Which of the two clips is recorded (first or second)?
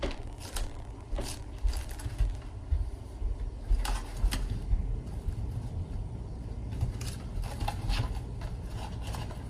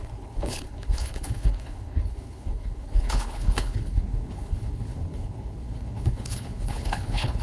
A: first